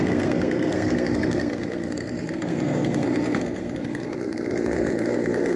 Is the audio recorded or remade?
remade